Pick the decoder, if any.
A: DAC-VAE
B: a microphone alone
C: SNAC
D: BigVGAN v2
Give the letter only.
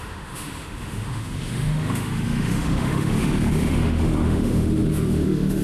A